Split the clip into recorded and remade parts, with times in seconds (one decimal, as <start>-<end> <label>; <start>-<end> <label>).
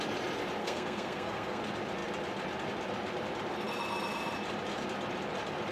0.0-0.6 recorded; 0.6-1.6 remade; 1.6-5.7 recorded